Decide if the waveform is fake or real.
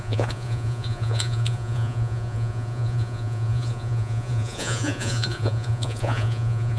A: fake